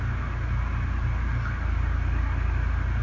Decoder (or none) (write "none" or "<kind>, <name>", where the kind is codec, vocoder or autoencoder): none